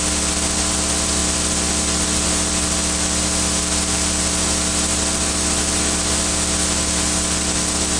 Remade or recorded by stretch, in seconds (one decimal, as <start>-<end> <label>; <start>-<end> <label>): 0.0-8.0 recorded